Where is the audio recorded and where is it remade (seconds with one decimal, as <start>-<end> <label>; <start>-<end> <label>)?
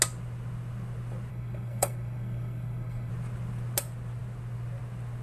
0.0-1.3 recorded; 1.3-3.1 remade; 3.1-5.2 recorded